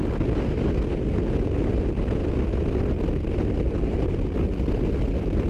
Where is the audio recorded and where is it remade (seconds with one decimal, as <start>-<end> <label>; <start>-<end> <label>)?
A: 0.0-5.5 recorded